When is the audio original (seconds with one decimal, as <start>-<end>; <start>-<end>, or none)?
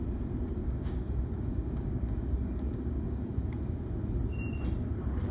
0.0-0.6; 3.8-5.3